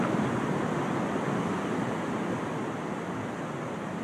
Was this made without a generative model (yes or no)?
yes